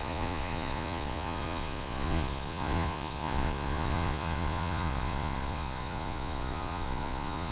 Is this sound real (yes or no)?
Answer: no